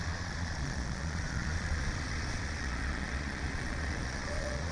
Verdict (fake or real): fake